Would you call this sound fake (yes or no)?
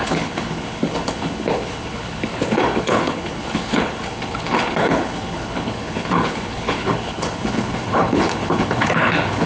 yes